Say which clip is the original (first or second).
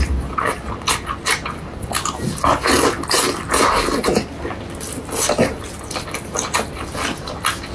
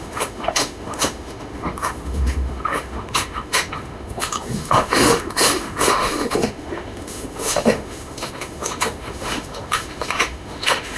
first